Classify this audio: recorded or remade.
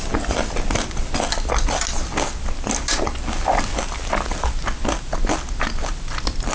recorded